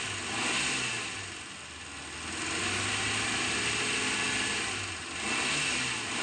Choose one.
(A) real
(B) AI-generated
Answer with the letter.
A